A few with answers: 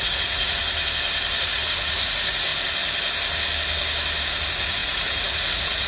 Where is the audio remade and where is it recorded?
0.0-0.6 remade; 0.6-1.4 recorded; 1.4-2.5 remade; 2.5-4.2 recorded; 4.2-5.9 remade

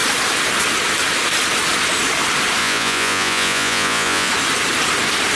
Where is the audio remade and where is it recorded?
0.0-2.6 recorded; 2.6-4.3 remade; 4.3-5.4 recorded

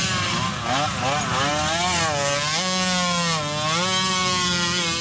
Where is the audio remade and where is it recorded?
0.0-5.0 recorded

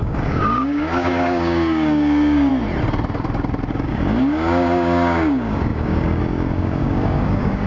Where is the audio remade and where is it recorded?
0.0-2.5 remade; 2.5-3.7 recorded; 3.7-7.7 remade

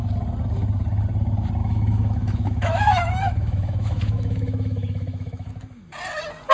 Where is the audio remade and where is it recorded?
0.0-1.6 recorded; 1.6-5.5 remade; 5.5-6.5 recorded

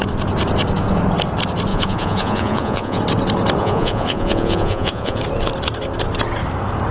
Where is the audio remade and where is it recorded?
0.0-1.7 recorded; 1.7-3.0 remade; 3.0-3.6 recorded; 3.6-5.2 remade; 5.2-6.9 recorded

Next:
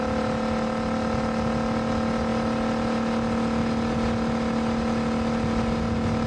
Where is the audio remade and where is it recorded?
0.0-6.3 recorded